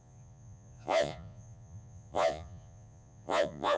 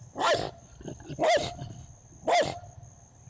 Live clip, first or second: second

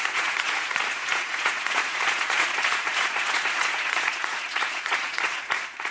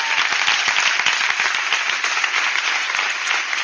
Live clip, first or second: second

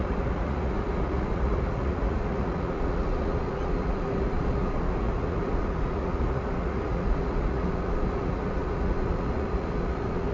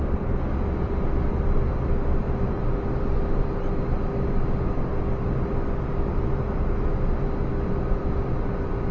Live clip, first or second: second